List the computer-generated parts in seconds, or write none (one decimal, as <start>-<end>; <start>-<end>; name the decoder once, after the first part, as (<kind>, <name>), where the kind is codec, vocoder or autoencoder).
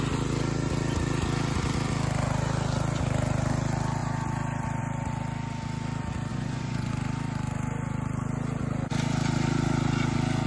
6.3-6.9 (vocoder, Vocos)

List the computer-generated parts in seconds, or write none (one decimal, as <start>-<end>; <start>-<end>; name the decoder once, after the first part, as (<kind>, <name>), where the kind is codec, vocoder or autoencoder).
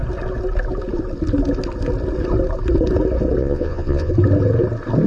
3.4-4.1 (vocoder, Vocos)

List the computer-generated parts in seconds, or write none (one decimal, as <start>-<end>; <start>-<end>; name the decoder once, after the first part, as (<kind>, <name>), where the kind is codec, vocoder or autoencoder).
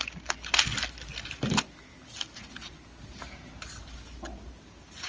none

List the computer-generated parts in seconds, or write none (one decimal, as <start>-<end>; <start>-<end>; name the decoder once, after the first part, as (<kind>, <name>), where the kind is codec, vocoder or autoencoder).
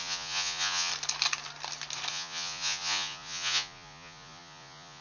0.0-0.9 (vocoder, Vocos); 2.1-5.0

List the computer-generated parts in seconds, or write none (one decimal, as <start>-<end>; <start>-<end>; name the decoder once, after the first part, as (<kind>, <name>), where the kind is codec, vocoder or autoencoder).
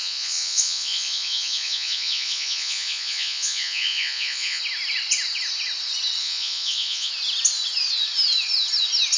0.0-4.6 (vocoder, Vocos); 6.2-7.1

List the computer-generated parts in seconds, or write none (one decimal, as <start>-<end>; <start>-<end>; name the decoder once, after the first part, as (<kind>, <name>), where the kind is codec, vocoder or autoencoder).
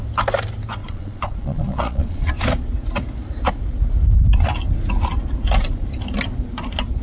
0.8-2.3 (vocoder, Vocos)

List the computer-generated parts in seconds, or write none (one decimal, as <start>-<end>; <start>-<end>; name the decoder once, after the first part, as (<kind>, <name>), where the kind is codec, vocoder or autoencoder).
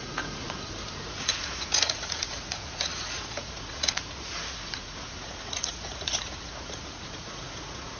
0.0-8.0 (vocoder, Vocos)